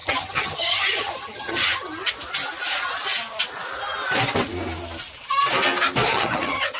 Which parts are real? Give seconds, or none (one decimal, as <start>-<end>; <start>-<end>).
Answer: 2.0-6.1